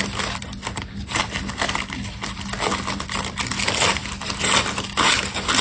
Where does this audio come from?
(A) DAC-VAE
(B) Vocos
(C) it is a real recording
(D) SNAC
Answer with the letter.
C